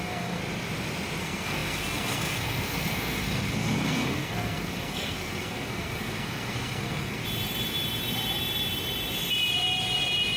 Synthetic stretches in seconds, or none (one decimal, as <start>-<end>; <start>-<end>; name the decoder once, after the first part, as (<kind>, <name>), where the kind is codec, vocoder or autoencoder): 0.0-0.4 (codec, SNAC); 1.2-7.2